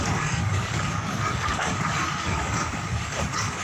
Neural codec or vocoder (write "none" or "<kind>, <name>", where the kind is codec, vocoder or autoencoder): codec, DAC